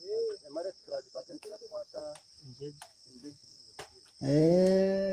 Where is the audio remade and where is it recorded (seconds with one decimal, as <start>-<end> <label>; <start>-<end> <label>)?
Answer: 0.0-0.8 recorded; 0.8-2.0 remade; 2.0-2.9 recorded; 2.9-3.6 remade; 3.6-4.4 recorded; 4.4-5.1 remade